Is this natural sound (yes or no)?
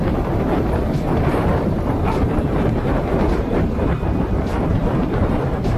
no